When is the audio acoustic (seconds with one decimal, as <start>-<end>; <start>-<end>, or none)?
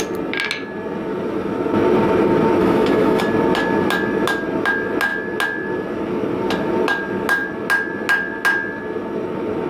0.0-2.6; 3.2-9.7